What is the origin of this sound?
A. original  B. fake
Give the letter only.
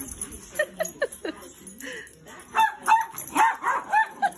A